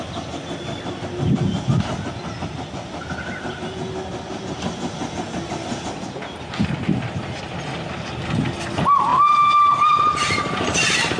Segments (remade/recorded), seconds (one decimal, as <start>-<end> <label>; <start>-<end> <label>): 0.0-11.2 recorded